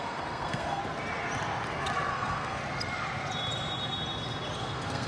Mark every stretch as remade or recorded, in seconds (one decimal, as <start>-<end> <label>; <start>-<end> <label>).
0.0-0.8 remade; 0.8-2.1 recorded; 2.1-2.6 remade; 2.6-4.6 recorded; 4.6-5.1 remade